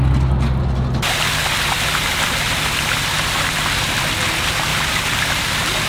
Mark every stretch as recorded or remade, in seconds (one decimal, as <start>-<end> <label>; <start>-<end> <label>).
0.0-2.1 recorded; 2.1-4.0 remade; 4.0-5.9 recorded